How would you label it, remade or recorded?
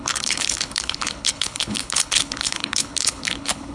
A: remade